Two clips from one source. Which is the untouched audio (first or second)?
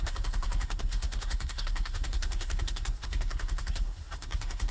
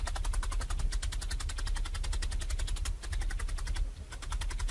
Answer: second